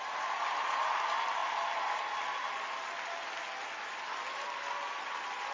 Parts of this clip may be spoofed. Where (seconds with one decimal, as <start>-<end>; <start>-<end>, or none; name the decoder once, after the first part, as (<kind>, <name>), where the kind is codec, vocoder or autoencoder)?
none